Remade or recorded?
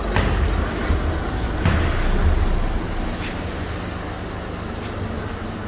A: recorded